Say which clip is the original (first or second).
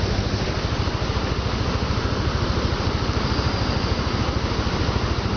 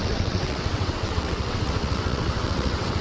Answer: first